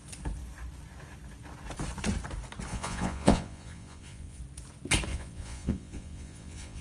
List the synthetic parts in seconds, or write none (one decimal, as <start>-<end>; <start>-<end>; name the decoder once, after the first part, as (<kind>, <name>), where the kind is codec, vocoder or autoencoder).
2.7-4.4 (vocoder, Vocos); 5.1-6.8